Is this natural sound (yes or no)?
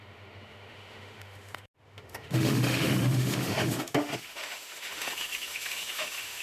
no